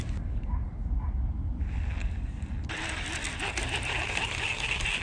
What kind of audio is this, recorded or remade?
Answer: recorded